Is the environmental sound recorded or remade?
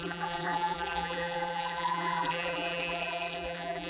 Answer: remade